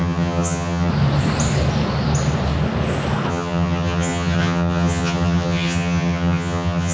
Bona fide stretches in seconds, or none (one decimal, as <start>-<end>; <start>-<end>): 0.9-3.3